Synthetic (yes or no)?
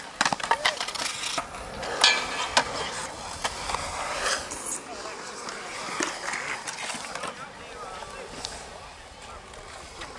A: no